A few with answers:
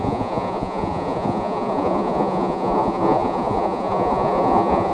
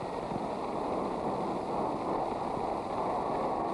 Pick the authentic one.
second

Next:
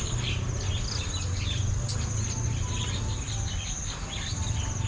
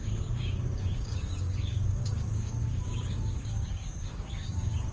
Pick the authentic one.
first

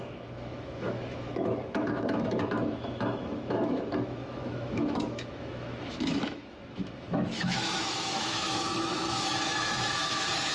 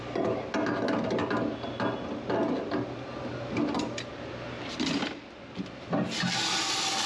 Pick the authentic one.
second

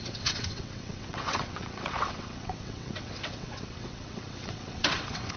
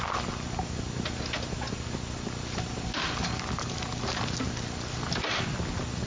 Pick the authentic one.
second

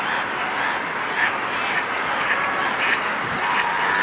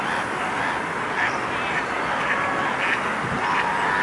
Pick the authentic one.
second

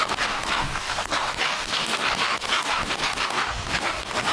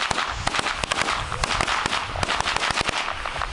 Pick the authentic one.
second